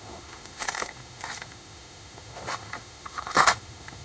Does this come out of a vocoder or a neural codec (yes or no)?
yes